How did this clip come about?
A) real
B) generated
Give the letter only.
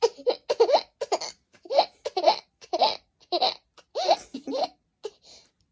A